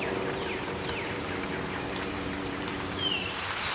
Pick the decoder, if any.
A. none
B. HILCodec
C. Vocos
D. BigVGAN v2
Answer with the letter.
D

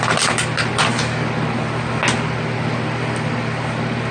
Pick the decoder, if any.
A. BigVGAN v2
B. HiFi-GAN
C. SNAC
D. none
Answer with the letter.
D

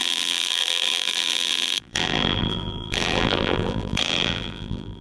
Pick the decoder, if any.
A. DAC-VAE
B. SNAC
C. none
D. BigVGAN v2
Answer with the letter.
D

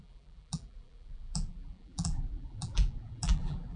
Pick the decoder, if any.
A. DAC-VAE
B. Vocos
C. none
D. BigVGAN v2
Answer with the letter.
D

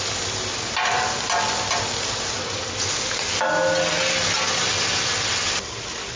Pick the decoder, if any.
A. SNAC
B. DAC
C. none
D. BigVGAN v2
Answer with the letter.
C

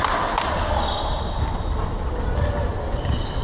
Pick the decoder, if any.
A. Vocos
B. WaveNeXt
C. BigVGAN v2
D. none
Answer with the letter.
D